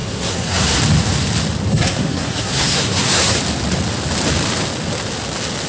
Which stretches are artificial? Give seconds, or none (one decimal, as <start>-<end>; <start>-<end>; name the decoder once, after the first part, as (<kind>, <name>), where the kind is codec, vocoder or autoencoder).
0.0-0.8 (codec, SNAC); 1.7-3.4